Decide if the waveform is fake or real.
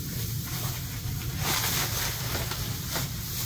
real